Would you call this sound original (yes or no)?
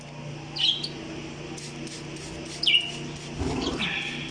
yes